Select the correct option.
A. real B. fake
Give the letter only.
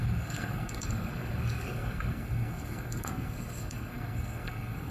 B